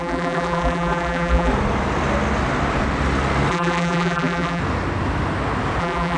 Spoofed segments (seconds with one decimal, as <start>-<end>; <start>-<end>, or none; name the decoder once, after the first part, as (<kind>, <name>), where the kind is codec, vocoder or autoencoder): 0.0-1.5 (vocoder, BigVGAN v2); 3.5-4.6; 5.8-6.2